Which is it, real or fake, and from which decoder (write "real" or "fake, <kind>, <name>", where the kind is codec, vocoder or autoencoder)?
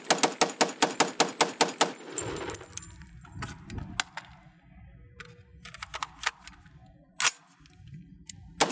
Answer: real